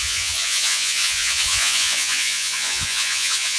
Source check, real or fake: fake